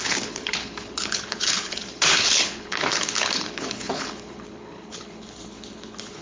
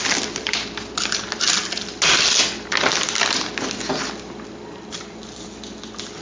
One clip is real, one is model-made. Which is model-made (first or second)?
first